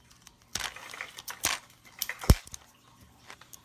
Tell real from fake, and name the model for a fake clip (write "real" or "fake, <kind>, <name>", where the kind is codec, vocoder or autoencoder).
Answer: real